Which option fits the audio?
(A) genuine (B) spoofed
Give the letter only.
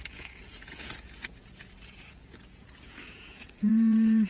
B